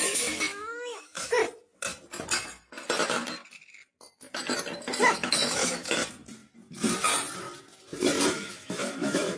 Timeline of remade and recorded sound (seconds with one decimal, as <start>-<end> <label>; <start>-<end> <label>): 0.0-1.4 remade; 1.4-5.0 recorded; 5.0-6.0 remade; 6.0-8.3 recorded; 8.3-9.4 remade